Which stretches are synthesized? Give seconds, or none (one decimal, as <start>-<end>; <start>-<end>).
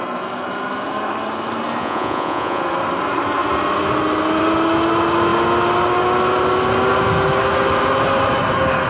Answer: 1.8-2.6